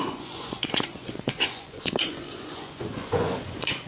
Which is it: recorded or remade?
remade